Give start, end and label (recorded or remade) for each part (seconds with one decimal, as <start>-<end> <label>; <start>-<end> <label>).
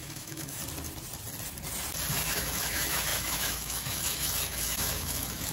0.0-0.6 remade; 0.6-2.1 recorded; 2.1-5.5 remade